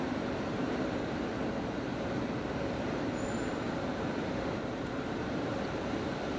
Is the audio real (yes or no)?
no